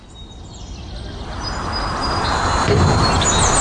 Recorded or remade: recorded